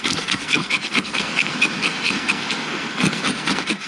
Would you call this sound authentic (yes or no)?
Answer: no